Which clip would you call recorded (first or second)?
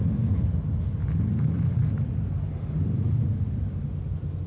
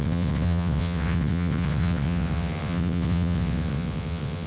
first